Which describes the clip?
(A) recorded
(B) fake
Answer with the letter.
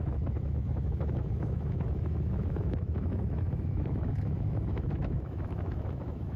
B